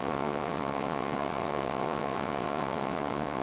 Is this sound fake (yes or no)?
yes